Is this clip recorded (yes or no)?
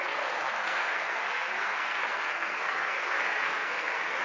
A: no